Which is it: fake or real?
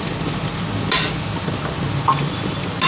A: real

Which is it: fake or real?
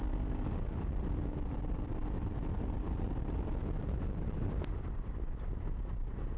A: fake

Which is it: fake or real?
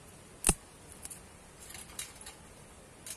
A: real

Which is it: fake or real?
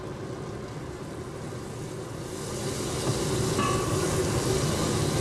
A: real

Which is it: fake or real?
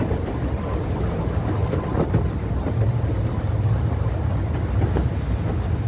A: real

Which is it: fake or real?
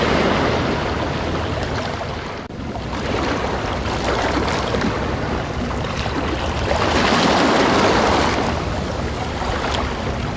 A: real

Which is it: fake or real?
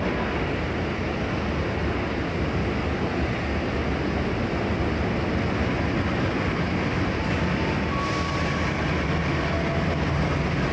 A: real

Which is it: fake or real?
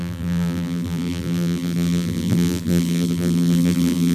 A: fake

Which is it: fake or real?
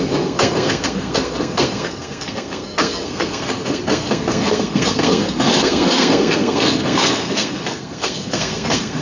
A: fake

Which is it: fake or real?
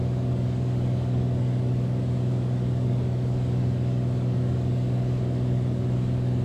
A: fake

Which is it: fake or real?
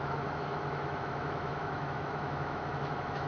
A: fake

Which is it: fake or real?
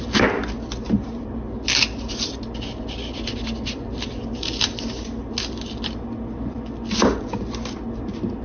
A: real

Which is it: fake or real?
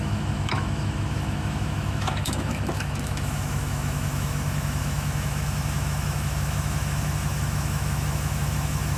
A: fake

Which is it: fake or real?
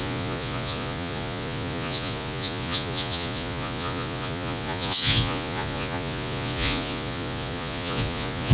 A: fake